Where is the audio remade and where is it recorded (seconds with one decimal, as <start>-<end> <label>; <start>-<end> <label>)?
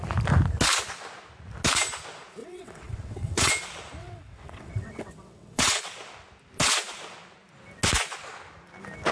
0.0-2.4 recorded; 2.4-3.5 remade; 3.5-4.0 recorded; 4.0-5.8 remade; 5.8-9.1 recorded